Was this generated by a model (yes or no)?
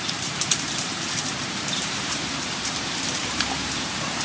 yes